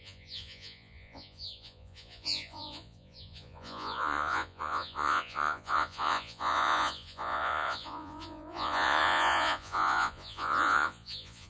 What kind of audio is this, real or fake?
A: fake